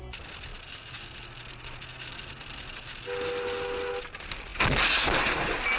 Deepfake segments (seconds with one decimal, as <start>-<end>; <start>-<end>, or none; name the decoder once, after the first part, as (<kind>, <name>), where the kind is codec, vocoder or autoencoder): none